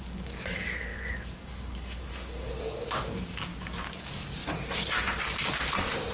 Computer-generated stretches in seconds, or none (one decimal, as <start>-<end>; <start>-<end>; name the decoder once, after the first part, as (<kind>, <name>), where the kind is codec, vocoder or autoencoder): 0.0-3.5 (codec, DAC); 4.0-4.4